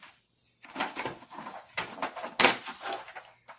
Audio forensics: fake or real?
real